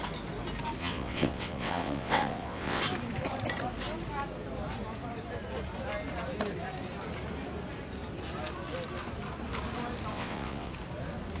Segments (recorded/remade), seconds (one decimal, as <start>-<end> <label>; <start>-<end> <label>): 0.0-0.8 recorded; 0.8-2.8 remade; 2.8-10.1 recorded; 10.1-10.7 remade; 10.7-11.4 recorded